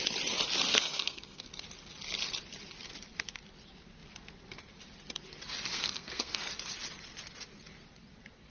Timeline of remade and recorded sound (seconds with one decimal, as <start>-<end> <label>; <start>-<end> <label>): 0.0-0.7 recorded; 0.7-1.5 remade; 1.5-5.7 recorded; 5.7-6.5 remade; 6.5-8.5 recorded